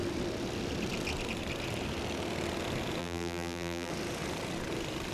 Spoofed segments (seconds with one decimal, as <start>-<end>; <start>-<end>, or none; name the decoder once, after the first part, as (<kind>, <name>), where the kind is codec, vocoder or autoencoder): 3.0-3.9 (vocoder, BigVGAN v2)